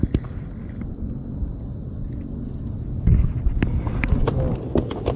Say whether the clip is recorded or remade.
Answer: recorded